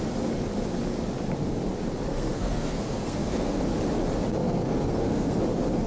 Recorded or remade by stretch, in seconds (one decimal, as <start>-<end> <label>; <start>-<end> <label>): 0.0-2.1 recorded; 2.1-3.6 remade; 3.6-4.4 recorded; 4.4-5.4 remade; 5.4-5.9 recorded